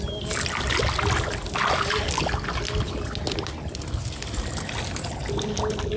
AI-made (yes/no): no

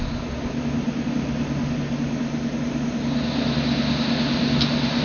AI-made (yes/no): no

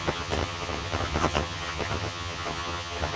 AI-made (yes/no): yes